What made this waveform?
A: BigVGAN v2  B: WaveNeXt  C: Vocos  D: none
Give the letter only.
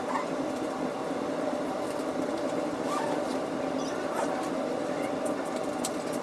D